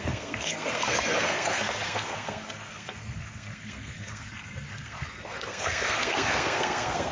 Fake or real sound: fake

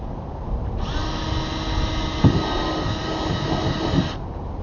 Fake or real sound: real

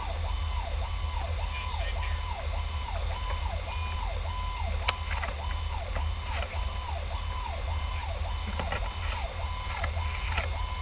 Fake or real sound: real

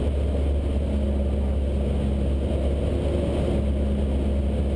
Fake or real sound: real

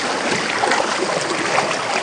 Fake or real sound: real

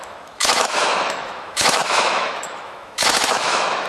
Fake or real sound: fake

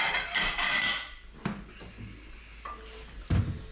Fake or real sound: real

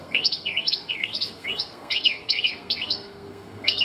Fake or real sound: fake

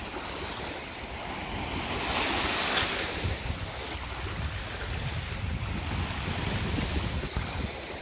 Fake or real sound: real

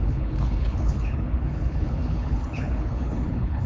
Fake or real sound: fake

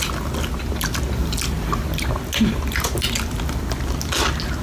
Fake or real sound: real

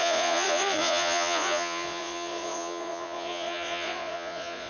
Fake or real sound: fake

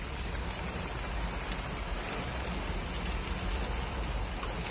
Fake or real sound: real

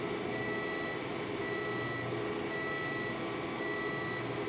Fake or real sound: real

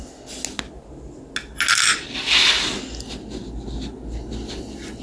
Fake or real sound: real